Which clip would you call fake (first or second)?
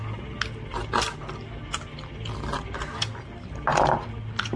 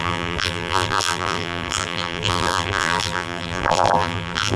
second